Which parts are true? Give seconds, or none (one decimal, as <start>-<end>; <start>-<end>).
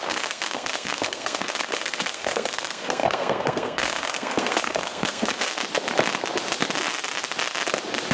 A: 5.5-8.1